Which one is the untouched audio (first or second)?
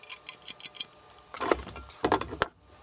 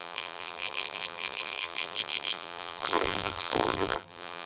first